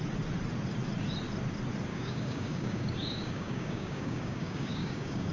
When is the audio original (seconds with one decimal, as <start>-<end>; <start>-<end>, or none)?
0.0-1.9